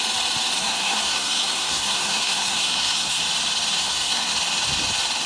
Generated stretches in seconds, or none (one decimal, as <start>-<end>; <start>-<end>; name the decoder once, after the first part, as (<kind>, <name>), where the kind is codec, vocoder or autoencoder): 0.6-3.2 (codec, SNAC); 3.8-4.3